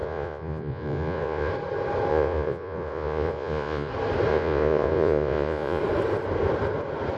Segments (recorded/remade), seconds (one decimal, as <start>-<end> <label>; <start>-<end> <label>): 0.0-1.5 remade; 1.5-2.1 recorded; 2.1-3.9 remade; 3.9-4.3 recorded; 4.3-5.8 remade; 5.8-7.2 recorded